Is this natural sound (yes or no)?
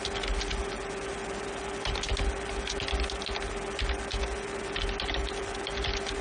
yes